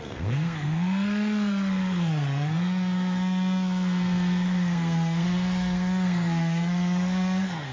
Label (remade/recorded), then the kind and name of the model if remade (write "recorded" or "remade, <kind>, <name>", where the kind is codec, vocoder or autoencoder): remade, codec, SNAC